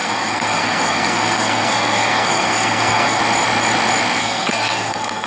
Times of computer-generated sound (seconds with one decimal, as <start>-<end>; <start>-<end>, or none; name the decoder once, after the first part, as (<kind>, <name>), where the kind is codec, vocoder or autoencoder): 0.0-3.2 (codec, SNAC); 4.2-5.3